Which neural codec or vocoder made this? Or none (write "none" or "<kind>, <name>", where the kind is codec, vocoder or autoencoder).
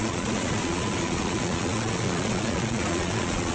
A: vocoder, Vocos